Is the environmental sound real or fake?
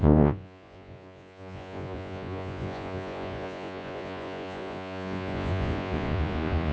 fake